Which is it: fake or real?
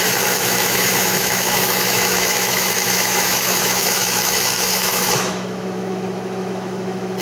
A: fake